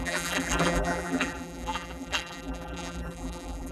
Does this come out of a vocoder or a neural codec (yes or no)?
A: yes